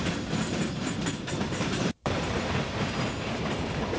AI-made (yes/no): yes